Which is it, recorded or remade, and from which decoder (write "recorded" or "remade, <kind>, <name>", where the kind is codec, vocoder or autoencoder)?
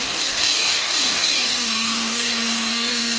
remade, codec, DAC